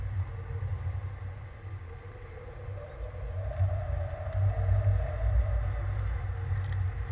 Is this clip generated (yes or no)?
no